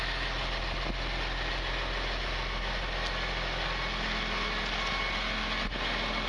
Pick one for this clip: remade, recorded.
recorded